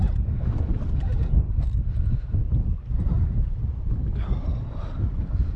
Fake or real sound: real